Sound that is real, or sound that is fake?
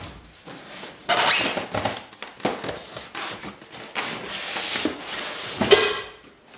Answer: real